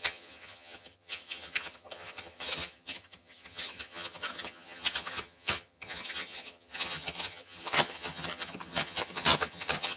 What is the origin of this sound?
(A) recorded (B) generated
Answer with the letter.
B